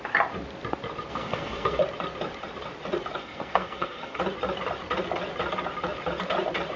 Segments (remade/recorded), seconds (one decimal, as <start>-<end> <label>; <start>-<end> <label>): 0.0-1.1 recorded; 1.1-1.8 remade; 1.8-3.2 recorded; 3.2-4.2 remade; 4.2-6.8 recorded